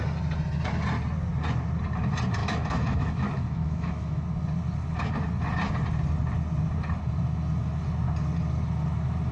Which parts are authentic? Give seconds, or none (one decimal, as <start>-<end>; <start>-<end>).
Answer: 0.0-2.4; 4.2-9.3